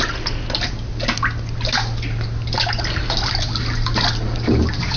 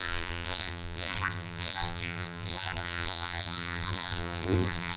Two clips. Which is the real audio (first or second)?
first